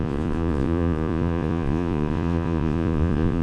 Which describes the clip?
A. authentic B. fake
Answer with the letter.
B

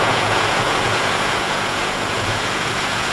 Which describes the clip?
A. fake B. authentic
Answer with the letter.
A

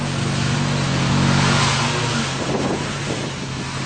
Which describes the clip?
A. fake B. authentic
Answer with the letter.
B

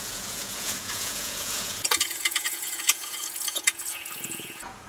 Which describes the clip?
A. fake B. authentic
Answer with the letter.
A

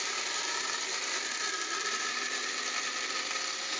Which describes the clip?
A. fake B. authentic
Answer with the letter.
B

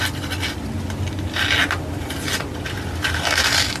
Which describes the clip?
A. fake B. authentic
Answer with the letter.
B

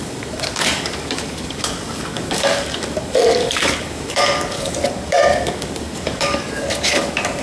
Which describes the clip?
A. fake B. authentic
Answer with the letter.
A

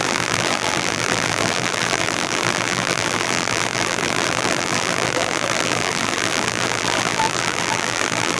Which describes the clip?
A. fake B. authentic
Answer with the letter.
A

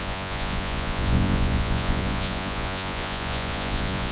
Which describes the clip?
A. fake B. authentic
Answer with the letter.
A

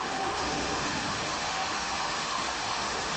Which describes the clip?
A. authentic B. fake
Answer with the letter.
B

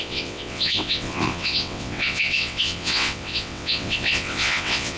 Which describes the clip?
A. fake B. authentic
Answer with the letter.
A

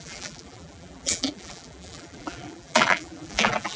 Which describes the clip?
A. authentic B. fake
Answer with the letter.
B